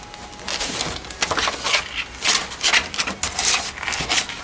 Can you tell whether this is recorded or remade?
recorded